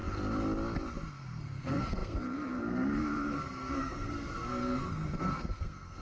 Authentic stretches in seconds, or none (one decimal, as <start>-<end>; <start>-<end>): 0.0-1.1